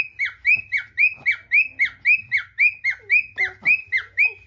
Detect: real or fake real